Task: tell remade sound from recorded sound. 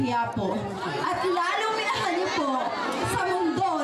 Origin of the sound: recorded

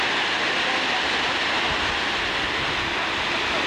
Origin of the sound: recorded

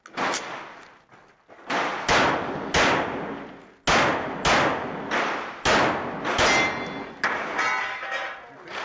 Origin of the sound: recorded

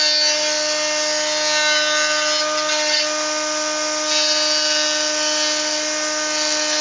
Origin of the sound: recorded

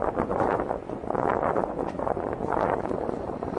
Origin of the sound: remade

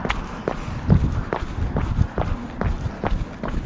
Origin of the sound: recorded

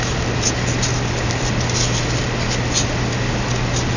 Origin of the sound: recorded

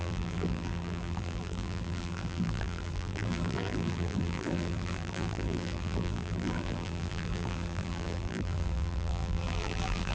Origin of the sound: remade